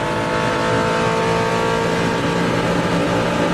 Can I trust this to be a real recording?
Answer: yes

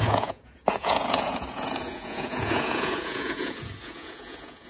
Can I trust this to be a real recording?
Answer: no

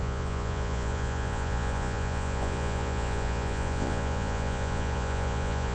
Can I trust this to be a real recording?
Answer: no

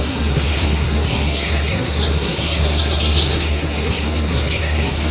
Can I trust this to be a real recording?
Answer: no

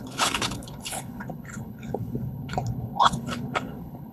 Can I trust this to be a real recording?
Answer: no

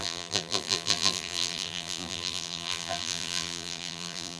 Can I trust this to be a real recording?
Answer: no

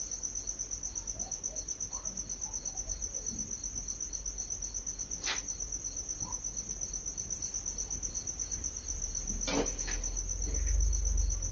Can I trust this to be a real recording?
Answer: yes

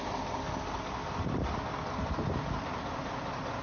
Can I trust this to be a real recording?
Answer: yes